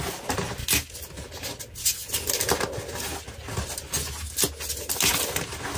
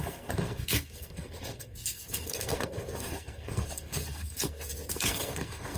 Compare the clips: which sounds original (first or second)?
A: first